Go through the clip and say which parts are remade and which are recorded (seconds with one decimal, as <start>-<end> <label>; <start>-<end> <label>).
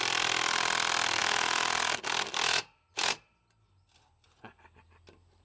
0.0-5.4 recorded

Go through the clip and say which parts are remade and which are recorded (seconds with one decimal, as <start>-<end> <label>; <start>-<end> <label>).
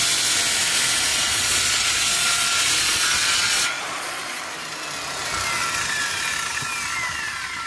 0.0-1.1 recorded; 1.1-4.4 remade; 4.4-7.7 recorded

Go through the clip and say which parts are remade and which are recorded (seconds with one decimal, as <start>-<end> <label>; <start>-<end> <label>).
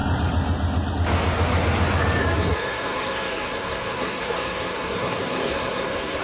0.0-2.2 recorded; 2.2-6.2 remade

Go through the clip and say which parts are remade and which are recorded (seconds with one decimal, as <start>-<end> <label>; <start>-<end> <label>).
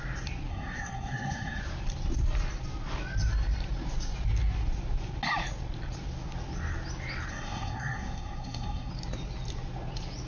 0.0-0.5 recorded; 0.5-1.6 remade; 1.6-7.3 recorded; 7.3-8.9 remade; 8.9-10.3 recorded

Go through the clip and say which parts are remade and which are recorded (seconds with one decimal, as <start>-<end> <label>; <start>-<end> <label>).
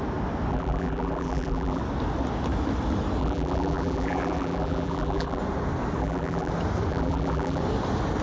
0.0-0.5 recorded; 0.5-1.8 remade; 1.8-3.2 recorded; 3.2-5.4 remade; 5.4-6.0 recorded; 6.0-6.5 remade; 6.5-6.9 recorded; 6.9-7.6 remade; 7.6-8.2 recorded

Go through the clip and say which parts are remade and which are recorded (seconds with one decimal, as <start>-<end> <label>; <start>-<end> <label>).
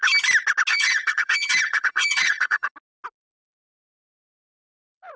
0.0-0.7 recorded; 0.7-2.7 remade; 2.7-5.2 recorded